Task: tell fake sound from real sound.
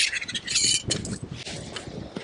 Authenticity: real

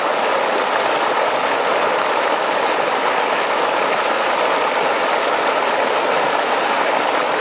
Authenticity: real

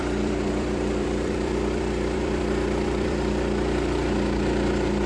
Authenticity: fake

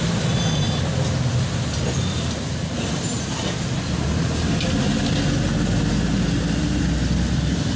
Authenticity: real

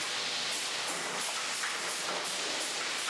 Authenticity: real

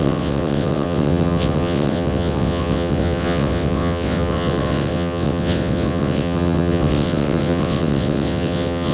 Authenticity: fake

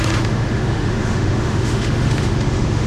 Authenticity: fake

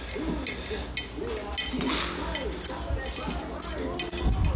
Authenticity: real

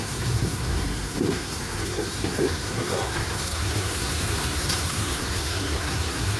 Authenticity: fake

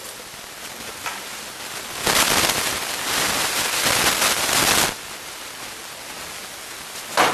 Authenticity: real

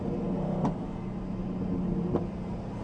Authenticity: real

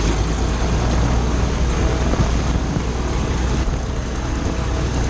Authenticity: real